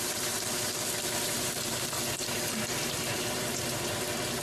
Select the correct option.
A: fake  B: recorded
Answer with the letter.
A